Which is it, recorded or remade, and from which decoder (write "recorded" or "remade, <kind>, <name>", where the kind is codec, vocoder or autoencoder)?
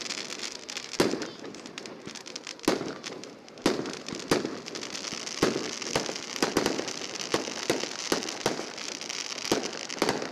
recorded